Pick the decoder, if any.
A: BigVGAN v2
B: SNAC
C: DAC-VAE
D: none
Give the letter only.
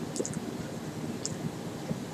D